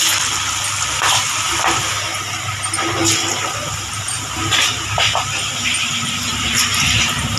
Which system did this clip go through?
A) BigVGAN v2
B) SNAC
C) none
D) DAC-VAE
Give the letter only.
A